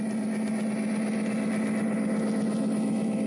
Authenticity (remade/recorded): recorded